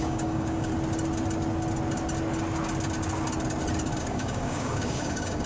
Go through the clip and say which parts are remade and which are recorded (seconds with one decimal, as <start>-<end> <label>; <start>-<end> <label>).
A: 0.0-0.7 remade; 0.7-4.0 recorded; 4.0-5.5 remade